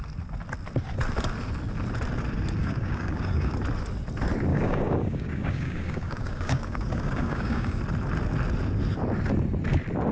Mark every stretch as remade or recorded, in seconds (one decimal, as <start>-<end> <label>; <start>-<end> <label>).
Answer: 0.0-2.6 recorded; 2.6-3.5 remade; 3.5-4.5 recorded; 4.5-7.8 remade; 7.8-10.1 recorded